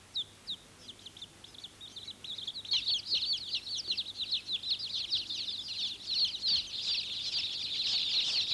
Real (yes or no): yes